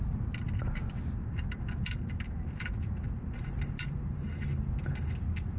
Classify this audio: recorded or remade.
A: recorded